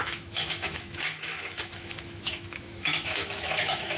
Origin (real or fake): fake